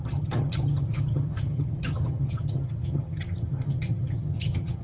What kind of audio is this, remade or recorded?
remade